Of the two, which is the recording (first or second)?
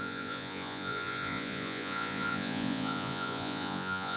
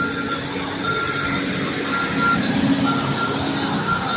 second